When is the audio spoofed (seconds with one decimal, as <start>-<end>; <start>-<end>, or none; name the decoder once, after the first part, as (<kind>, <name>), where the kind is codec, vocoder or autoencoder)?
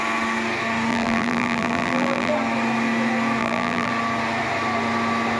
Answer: 0.9-2.3 (vocoder, BigVGAN v2); 3.4-3.9